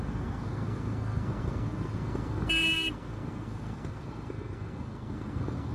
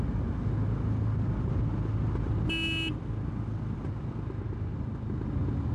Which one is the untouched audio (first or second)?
second